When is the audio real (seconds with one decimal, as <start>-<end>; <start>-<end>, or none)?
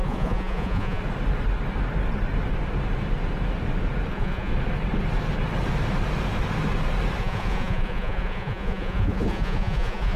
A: 1.0-4.1; 4.5-7.2